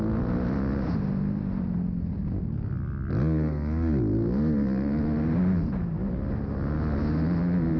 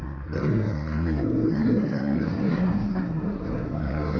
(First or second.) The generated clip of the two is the second